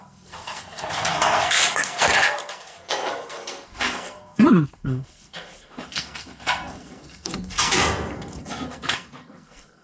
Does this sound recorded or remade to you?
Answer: remade